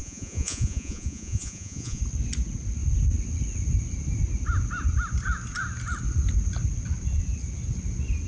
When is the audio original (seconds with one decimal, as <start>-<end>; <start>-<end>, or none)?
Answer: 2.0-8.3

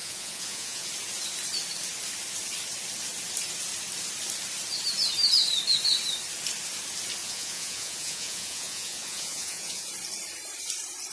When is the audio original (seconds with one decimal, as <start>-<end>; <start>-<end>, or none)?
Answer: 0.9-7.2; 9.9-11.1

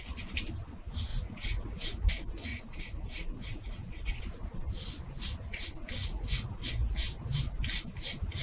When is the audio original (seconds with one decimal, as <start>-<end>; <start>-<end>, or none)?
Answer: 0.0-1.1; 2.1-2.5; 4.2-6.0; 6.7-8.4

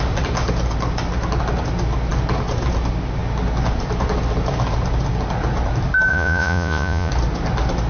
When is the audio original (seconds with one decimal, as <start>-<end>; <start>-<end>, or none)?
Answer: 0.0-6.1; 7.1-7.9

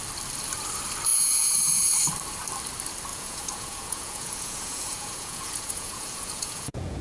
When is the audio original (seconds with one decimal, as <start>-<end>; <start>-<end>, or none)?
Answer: 0.0-1.1; 1.9-3.1

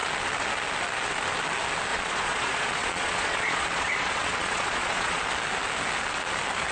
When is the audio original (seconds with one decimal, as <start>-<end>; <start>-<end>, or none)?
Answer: 0.0-1.9; 5.2-6.7